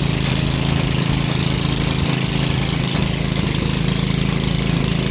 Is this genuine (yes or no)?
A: yes